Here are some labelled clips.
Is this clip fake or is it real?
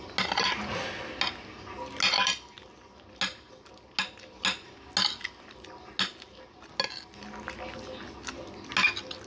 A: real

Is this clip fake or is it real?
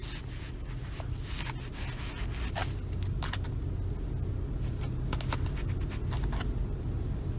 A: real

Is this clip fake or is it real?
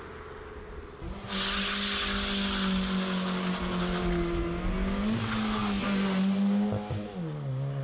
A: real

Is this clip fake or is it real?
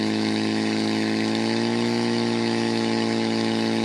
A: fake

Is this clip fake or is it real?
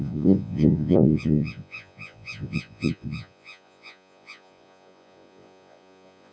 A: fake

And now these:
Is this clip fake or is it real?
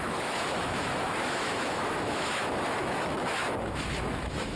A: fake